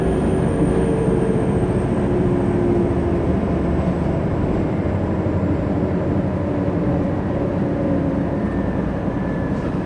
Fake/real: fake